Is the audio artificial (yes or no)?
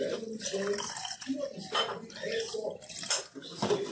no